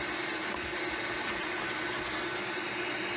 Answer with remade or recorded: recorded